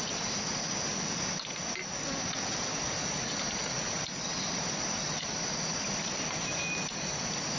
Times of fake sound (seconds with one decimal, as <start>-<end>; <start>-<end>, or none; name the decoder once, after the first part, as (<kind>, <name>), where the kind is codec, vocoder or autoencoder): 4.3-4.9 (vocoder, BigVGAN v2)